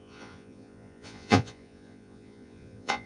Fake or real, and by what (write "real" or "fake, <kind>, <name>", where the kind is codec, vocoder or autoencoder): fake, vocoder, Vocos